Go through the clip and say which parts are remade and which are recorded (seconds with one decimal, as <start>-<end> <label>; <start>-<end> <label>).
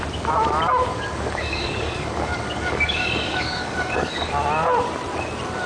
0.0-0.9 recorded; 0.9-4.3 remade; 4.3-5.7 recorded